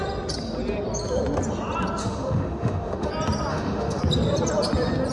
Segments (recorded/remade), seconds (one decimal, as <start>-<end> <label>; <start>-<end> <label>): 0.0-2.0 recorded; 2.0-3.1 remade; 3.1-3.5 recorded; 3.5-4.0 remade; 4.0-5.1 recorded